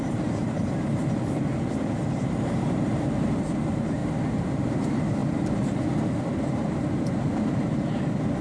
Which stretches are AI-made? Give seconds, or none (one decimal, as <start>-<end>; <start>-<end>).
0.0-4.0; 4.5-5.2; 6.1-8.4

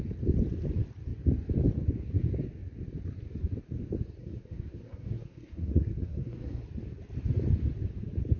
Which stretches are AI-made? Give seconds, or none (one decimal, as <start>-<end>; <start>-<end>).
4.2-6.6

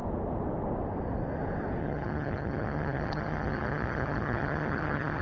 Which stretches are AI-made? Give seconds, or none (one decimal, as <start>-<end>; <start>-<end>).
1.8-5.2

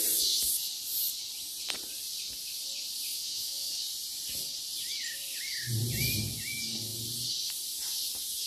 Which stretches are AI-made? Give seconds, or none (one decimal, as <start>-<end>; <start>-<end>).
3.1-3.7

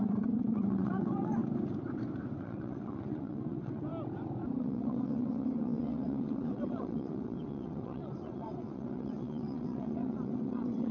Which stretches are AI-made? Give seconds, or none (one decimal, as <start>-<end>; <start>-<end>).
0.0-1.4; 2.4-3.9; 4.6-10.9

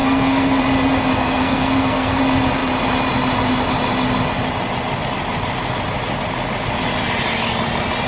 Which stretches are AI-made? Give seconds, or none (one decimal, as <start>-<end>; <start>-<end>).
0.0-0.6; 1.1-2.2

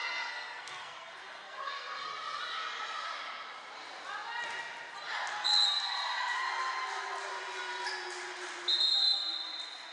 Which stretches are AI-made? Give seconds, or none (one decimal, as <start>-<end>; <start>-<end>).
0.0-2.1

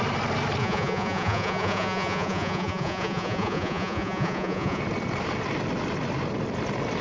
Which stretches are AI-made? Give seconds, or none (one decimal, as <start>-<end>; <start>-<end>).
0.6-4.8